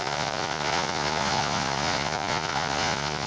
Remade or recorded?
remade